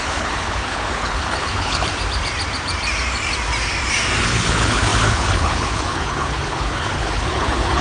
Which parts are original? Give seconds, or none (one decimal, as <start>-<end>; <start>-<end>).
1.9-4.2